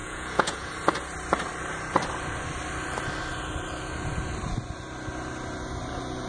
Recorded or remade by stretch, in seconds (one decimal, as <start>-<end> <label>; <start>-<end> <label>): 0.0-0.7 remade; 0.7-6.3 recorded